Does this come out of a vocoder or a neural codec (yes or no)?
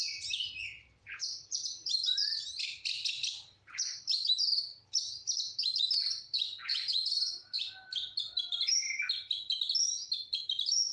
no